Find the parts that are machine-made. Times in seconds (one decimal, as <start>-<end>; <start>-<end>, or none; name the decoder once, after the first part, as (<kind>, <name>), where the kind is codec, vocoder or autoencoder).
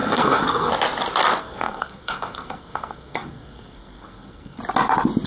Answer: 0.0-0.7 (codec, SNAC); 1.4-4.6